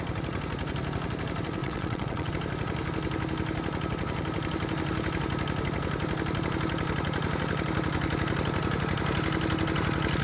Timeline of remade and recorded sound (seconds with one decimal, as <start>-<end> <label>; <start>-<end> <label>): 0.0-1.6 recorded; 1.6-2.3 remade; 2.3-10.2 recorded